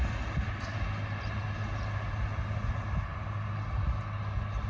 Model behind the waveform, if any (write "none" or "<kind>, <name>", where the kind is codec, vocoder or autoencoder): none